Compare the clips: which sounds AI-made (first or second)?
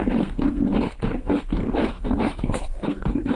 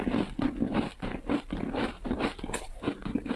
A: first